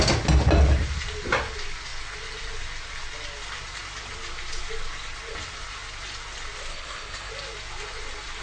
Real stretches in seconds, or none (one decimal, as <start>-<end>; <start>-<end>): 0.0-6.7; 7.3-8.4